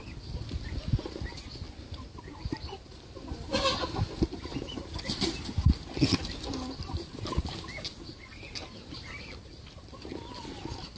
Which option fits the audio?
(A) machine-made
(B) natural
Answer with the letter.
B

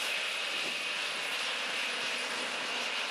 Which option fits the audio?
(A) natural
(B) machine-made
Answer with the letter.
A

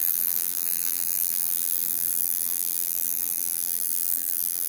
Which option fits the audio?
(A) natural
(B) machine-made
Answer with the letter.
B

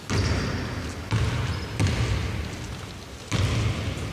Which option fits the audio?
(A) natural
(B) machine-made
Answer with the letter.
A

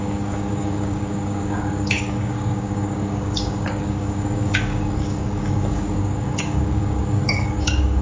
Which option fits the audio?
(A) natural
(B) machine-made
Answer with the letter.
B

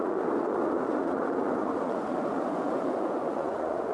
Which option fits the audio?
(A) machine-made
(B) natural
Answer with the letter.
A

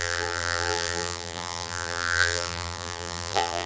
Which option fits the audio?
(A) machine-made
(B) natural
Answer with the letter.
A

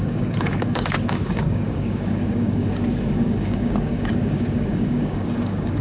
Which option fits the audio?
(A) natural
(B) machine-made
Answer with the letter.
B